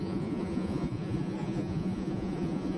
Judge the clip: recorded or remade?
remade